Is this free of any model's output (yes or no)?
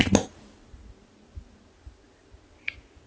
yes